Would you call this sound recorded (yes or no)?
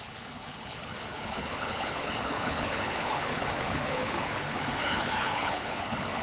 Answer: no